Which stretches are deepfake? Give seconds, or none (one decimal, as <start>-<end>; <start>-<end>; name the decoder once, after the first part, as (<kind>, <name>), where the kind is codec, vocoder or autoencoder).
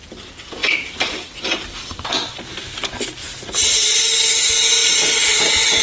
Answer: none